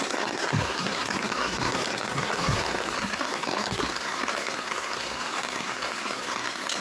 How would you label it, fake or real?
fake